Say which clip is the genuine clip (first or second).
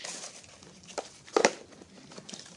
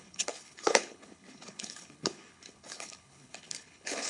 first